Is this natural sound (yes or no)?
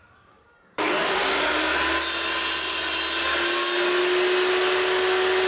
yes